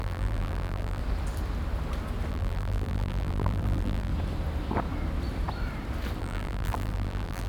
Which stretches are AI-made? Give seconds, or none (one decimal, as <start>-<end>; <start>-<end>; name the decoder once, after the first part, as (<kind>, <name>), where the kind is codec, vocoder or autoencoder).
0.0-1.0 (vocoder, BigVGAN v2); 2.3-4.1; 6.2-7.5